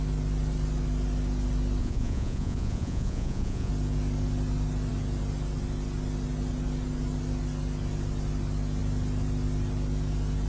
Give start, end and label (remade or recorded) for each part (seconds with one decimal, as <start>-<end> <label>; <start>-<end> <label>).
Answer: 0.0-1.8 recorded; 1.8-3.7 remade; 3.7-10.5 recorded